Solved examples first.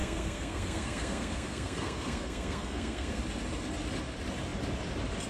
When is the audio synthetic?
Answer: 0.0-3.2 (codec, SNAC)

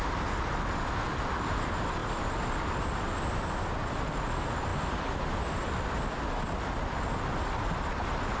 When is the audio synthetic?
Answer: none

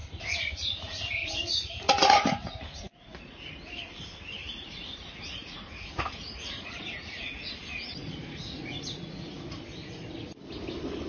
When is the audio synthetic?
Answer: 0.0-3.4 (vocoder, Vocos); 4.4-7.3; 8.0-9.6

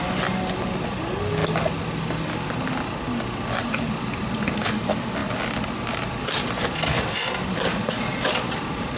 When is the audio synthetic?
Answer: none